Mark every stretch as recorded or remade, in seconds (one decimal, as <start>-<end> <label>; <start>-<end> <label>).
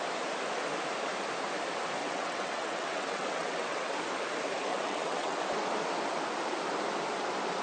0.0-2.0 recorded; 2.0-3.9 remade; 3.9-4.7 recorded; 4.7-5.4 remade; 5.4-7.6 recorded